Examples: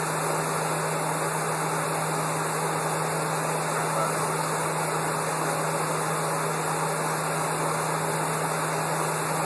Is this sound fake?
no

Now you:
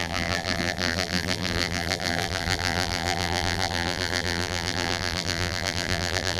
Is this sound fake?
yes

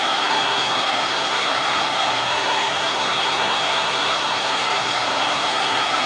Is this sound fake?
yes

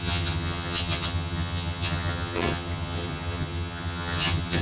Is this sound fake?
yes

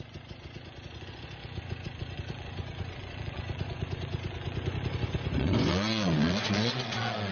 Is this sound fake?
yes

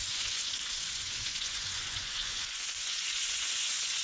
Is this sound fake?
yes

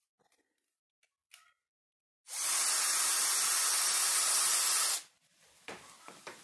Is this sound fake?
no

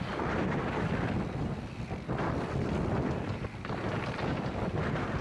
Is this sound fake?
no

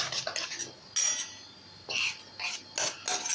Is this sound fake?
no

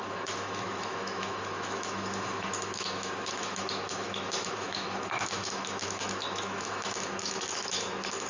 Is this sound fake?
yes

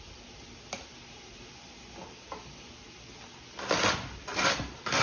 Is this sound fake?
no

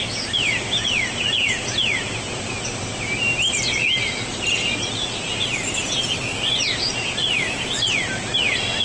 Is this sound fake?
no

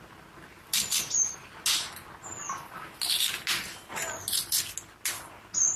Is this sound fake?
no